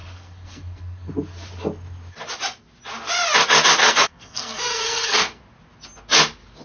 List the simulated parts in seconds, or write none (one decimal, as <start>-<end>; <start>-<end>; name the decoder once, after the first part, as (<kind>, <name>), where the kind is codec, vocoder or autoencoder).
0.0-1.1 (codec, SNAC); 3.8-5.4